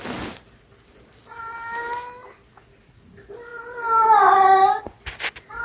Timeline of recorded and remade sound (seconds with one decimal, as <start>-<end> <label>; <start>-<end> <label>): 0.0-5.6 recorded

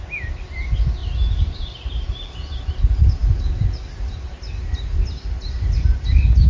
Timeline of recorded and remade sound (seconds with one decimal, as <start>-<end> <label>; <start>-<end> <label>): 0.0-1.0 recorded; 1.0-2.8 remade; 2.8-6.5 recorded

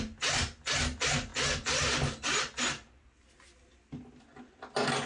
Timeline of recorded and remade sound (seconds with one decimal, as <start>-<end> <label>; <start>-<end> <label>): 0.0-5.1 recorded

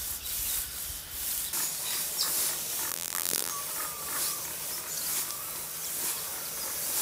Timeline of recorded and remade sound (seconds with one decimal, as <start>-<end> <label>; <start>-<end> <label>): 0.0-2.9 recorded; 2.9-3.5 remade; 3.5-7.0 recorded

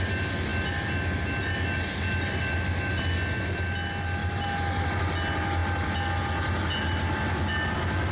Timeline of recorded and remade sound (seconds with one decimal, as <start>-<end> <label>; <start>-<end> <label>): 0.0-4.2 recorded; 4.2-4.9 remade; 4.9-8.1 recorded

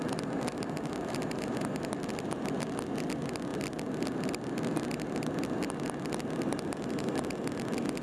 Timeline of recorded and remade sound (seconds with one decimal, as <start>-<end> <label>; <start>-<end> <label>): 0.0-8.0 recorded

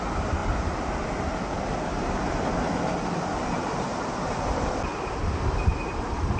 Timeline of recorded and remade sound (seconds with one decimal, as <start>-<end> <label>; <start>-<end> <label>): 0.0-0.4 recorded; 0.4-2.2 remade; 2.2-6.4 recorded

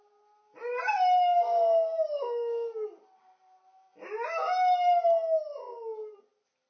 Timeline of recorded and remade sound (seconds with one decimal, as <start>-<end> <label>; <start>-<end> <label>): 0.0-6.7 recorded